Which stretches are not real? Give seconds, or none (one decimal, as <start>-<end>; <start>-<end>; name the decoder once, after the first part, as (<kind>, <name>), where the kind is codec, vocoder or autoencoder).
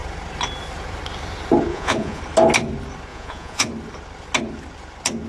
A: 1.7-2.2 (vocoder, Vocos); 3.1-3.7